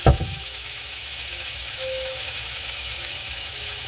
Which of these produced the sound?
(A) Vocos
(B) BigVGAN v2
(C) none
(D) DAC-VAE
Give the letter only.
D